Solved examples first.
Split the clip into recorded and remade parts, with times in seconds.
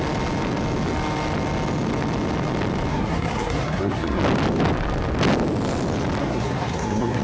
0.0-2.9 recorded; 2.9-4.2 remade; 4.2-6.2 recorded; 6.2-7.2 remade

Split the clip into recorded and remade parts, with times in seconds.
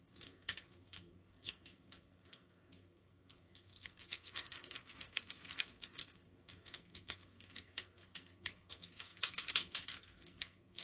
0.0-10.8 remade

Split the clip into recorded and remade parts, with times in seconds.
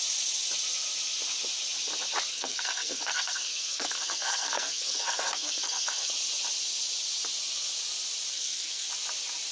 0.0-2.3 recorded; 2.3-6.1 remade; 6.1-8.3 recorded; 8.3-8.9 remade; 8.9-9.5 recorded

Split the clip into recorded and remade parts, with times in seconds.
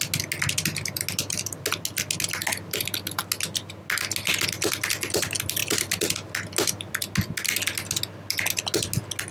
0.0-9.3 recorded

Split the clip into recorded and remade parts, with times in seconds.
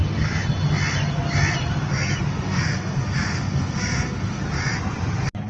0.0-2.3 recorded; 2.3-4.4 remade; 4.4-5.5 recorded